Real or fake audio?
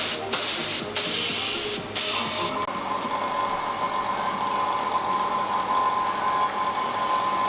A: real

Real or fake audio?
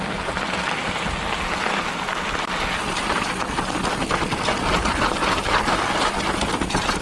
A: real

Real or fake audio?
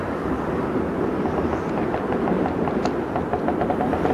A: real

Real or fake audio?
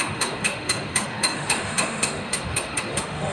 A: fake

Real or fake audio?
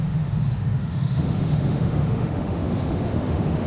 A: fake